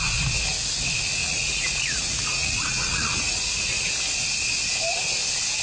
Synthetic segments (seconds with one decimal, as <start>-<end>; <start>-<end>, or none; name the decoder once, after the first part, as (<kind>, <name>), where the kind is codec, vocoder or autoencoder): 1.2-3.9 (vocoder, Vocos)